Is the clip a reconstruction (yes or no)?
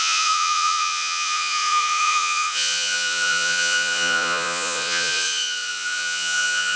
yes